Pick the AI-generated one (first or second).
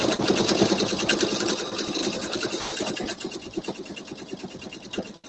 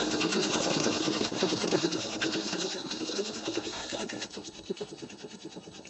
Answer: second